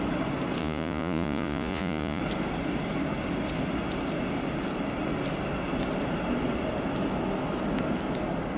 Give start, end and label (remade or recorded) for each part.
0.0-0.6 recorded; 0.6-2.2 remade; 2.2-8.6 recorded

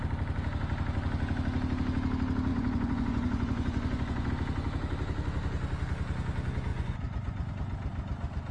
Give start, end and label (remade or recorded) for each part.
0.0-2.5 recorded; 2.5-4.3 remade; 4.3-6.7 recorded; 6.7-7.5 remade; 7.5-8.5 recorded

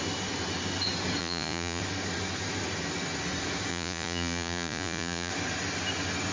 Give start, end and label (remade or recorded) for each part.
0.0-1.2 recorded; 1.2-1.8 remade; 1.8-3.7 recorded; 3.7-5.3 remade; 5.3-6.3 recorded

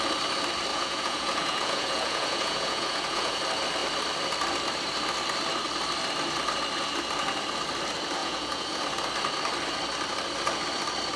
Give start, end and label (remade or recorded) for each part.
0.0-0.7 recorded; 0.7-3.4 remade; 3.4-8.2 recorded; 8.2-8.8 remade; 8.8-11.2 recorded

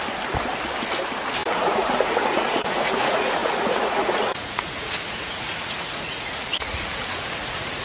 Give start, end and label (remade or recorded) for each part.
0.0-1.7 recorded; 1.7-7.8 remade

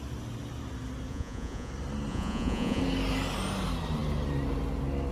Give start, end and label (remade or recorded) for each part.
0.0-1.1 recorded; 1.1-1.7 remade; 1.7-2.1 recorded; 2.1-2.8 remade; 2.8-5.1 recorded

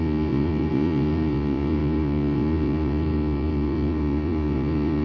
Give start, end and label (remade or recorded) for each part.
0.0-5.0 remade

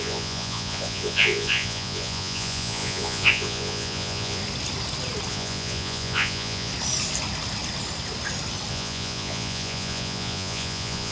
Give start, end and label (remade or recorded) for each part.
0.0-4.4 remade; 4.4-5.3 recorded; 5.3-6.7 remade; 6.7-8.7 recorded; 8.7-11.1 remade